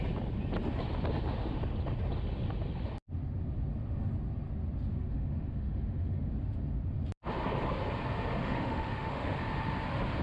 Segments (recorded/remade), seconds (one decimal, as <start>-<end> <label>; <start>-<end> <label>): 0.0-4.9 recorded; 4.9-6.3 remade; 6.3-8.4 recorded; 8.4-9.4 remade; 9.4-10.2 recorded